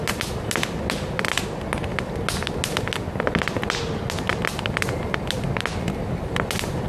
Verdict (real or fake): real